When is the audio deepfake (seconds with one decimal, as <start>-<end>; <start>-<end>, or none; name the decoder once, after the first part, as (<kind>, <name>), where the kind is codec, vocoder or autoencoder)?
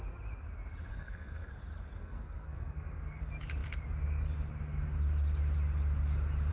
0.9-1.5 (codec, SNAC); 2.0-3.2